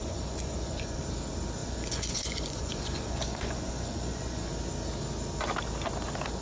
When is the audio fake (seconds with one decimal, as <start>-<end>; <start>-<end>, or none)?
0.0-1.0; 1.6-4.5

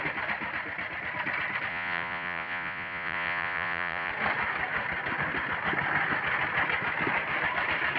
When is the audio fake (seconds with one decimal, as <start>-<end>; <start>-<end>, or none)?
1.7-4.1